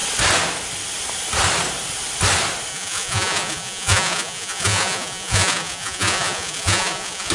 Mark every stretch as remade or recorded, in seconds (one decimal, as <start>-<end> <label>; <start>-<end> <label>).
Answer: 0.0-2.7 recorded; 2.7-7.3 remade